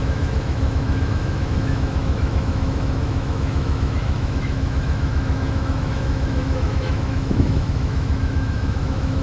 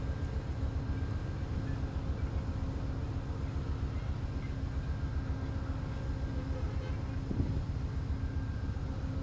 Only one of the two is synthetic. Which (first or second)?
first